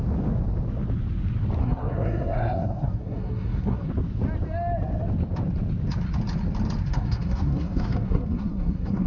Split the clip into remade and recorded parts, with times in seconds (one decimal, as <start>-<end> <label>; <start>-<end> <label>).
0.0-1.6 recorded; 1.6-3.9 remade; 3.9-6.9 recorded; 6.9-9.1 remade